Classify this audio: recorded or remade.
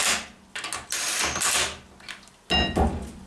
recorded